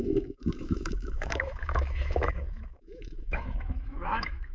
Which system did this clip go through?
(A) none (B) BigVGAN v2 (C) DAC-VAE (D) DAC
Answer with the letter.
C